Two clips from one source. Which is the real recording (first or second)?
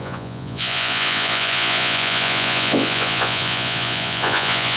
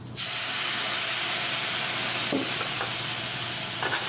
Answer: second